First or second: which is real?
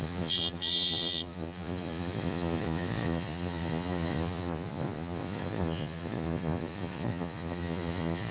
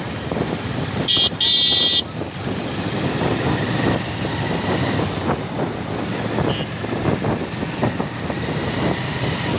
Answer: second